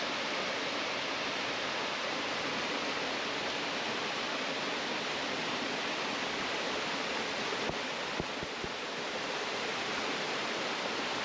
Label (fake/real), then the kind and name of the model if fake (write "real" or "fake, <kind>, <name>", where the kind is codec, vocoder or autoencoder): real